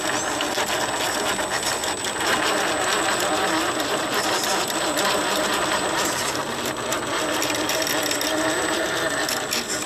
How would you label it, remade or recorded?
recorded